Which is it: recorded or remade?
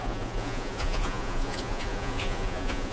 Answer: remade